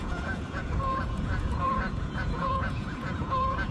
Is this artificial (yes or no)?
yes